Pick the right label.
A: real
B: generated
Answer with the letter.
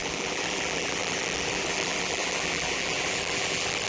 B